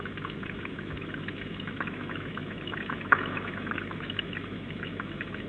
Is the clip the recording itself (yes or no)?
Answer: no